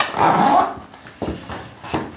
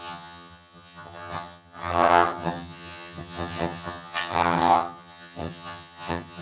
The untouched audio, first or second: first